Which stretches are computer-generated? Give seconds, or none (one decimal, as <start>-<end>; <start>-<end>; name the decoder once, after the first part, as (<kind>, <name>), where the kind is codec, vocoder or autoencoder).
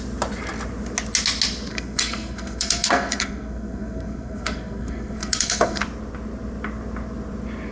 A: 1.7-5.8 (codec, SNAC)